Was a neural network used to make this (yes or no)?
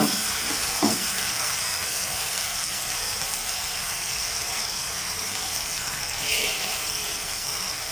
yes